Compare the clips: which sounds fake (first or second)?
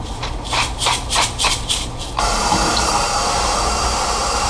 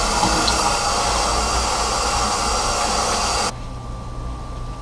first